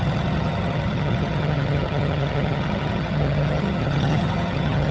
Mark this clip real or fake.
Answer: fake